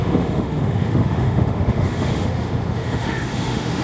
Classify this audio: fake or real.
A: fake